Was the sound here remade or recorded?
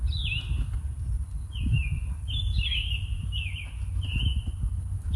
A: recorded